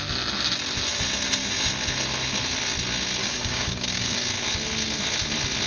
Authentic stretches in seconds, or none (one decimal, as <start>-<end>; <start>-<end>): 0.0-3.2; 4.2-5.7